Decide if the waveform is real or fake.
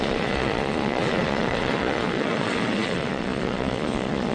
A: fake